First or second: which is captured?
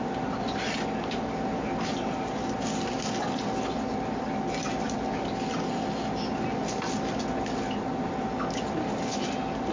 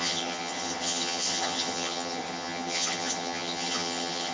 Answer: first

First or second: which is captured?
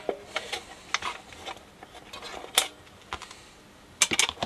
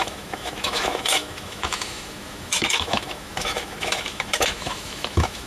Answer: first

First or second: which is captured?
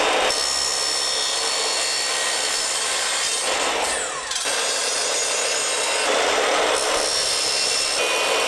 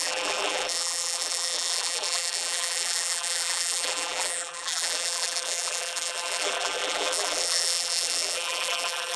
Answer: first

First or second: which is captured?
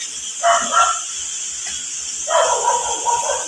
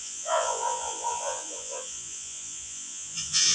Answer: first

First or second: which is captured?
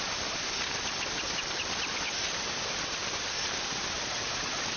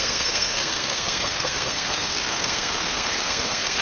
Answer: first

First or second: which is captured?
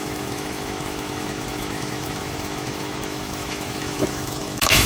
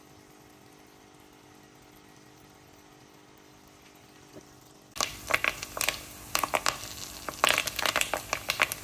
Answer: second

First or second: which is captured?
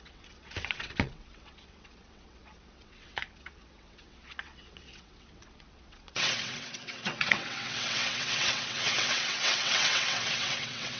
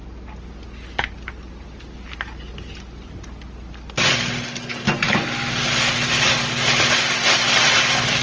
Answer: second